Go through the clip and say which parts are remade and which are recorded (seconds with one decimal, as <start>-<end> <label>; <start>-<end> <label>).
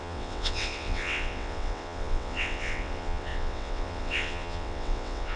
0.0-5.4 remade